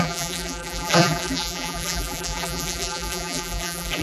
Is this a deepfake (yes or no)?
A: yes